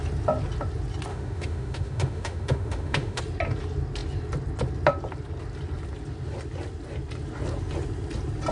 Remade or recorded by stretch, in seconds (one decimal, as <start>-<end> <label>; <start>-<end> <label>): 0.0-1.1 recorded; 1.1-3.2 remade; 3.2-8.5 recorded

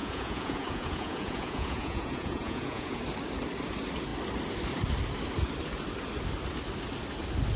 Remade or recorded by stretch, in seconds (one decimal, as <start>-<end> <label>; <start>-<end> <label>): 0.0-3.0 remade; 3.0-7.6 recorded

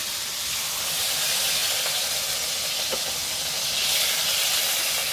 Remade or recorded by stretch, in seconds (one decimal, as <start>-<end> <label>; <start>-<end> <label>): 0.0-5.1 recorded